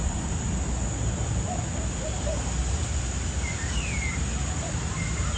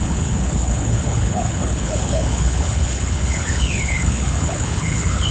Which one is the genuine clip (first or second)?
first